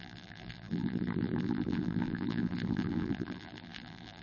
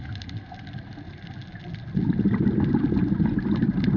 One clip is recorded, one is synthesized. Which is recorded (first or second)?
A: second